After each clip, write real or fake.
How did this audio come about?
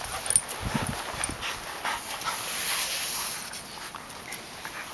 real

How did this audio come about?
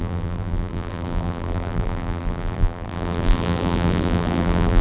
fake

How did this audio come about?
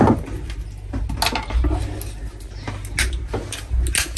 real